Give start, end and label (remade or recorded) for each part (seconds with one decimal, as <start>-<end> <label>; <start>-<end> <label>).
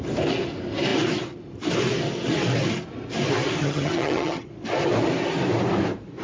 0.0-3.6 recorded; 3.6-4.5 remade; 4.5-6.2 recorded